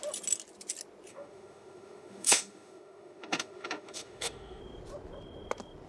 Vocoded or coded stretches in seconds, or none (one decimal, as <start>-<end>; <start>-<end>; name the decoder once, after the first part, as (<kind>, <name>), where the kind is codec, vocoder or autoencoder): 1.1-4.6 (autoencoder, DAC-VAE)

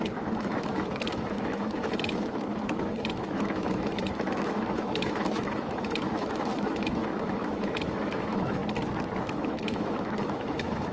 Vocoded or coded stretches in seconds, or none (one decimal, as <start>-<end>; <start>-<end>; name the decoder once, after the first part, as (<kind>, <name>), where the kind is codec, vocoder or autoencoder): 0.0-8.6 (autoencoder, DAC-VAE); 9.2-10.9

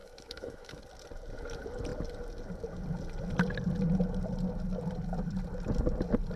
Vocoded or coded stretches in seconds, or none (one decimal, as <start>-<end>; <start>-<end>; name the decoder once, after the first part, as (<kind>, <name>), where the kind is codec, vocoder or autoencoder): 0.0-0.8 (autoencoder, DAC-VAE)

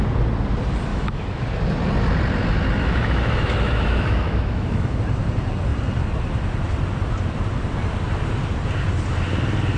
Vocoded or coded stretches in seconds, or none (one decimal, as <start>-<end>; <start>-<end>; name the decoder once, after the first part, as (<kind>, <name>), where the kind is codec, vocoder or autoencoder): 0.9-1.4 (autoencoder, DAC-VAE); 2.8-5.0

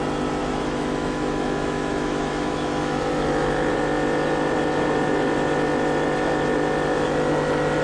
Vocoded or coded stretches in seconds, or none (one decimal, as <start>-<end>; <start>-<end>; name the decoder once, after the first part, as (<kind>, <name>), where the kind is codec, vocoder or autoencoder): 0.4-3.7 (autoencoder, DAC-VAE)

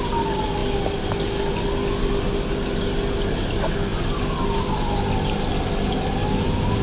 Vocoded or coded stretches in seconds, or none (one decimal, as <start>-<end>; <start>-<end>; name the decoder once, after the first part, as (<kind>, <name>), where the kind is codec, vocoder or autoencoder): none

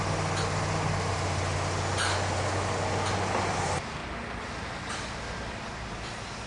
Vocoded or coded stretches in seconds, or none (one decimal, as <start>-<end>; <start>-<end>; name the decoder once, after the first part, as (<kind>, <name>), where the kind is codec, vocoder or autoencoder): none